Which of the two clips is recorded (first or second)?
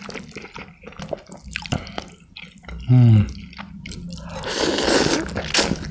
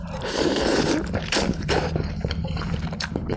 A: first